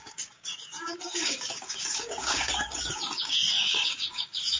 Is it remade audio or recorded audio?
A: remade